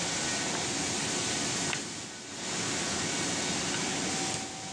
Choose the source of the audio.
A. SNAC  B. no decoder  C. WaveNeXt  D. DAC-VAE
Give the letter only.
B